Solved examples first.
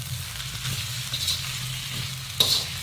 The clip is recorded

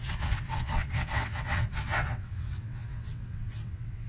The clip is remade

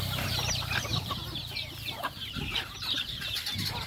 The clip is remade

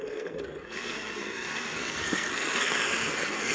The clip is remade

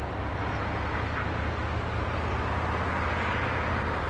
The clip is recorded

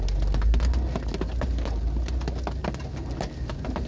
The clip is recorded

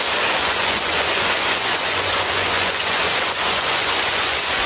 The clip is remade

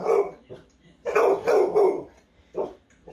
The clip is remade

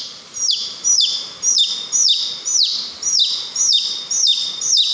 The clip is recorded